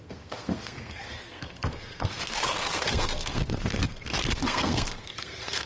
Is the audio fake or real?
fake